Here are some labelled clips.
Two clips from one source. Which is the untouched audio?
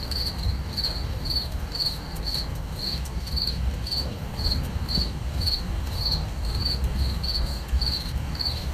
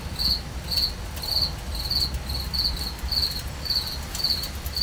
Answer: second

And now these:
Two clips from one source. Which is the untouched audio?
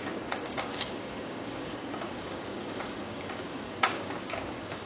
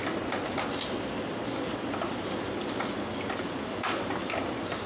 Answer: second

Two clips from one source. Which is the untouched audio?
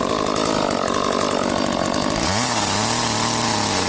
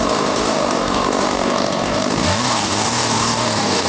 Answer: first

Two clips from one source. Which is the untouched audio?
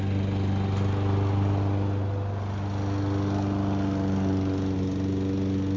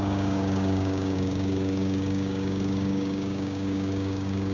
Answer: first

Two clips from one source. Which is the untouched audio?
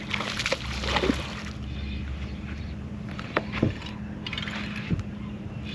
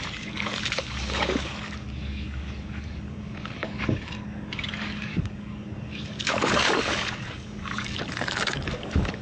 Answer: first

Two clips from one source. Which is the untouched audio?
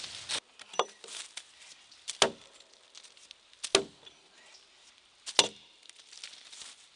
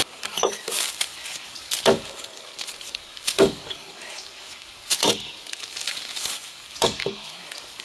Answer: first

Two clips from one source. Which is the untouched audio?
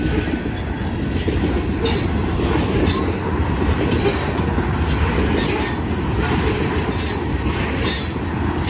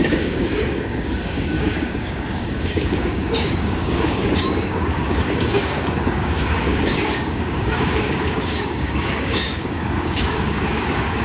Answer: first